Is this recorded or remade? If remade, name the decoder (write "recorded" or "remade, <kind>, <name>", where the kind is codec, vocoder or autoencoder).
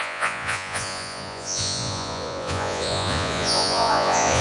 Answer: remade, vocoder, Vocos